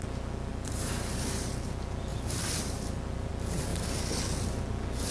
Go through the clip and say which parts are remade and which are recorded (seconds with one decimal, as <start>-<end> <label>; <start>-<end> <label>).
0.0-0.5 recorded; 0.5-1.5 remade; 1.5-2.1 recorded; 2.1-3.3 remade; 3.3-5.1 recorded